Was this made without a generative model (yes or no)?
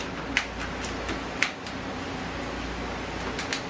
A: yes